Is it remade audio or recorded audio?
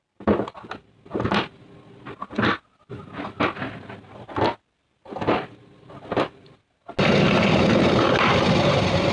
recorded